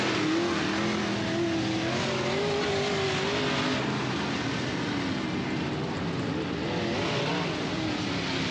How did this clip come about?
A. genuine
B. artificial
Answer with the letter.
A